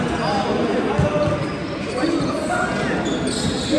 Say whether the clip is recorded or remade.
recorded